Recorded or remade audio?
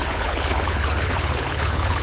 remade